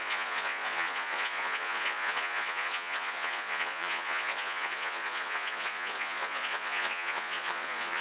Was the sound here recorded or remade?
remade